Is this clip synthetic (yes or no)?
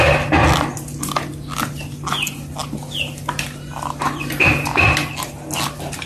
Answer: no